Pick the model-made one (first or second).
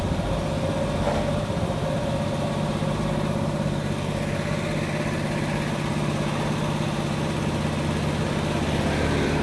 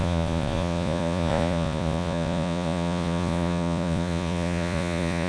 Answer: second